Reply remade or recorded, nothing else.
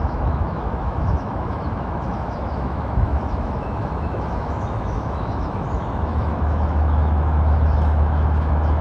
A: remade